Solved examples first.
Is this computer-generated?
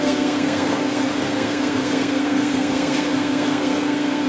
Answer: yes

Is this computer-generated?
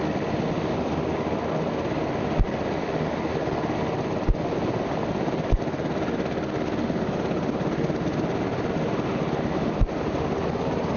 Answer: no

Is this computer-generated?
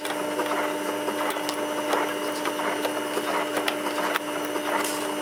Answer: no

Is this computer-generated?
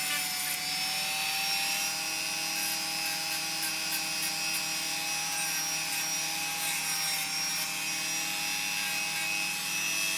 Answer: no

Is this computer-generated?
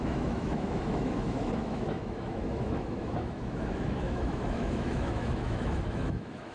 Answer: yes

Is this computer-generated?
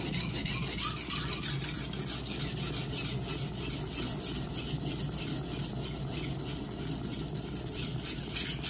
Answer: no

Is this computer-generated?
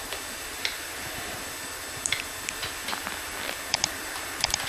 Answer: yes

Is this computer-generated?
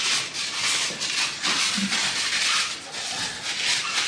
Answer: no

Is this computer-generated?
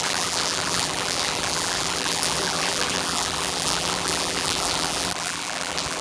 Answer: yes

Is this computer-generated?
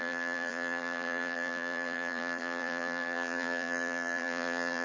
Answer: yes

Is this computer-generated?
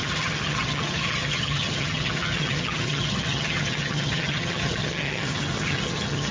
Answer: yes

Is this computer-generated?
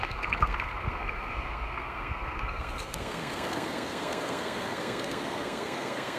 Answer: yes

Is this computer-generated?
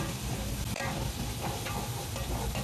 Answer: no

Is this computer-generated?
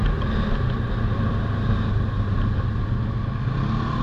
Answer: no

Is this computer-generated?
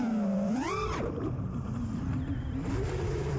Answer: yes